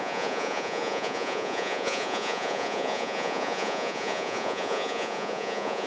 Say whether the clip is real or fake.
fake